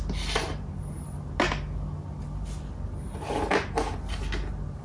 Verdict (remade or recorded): recorded